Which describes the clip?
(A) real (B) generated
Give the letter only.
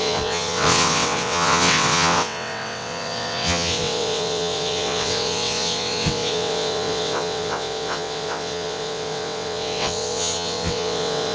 B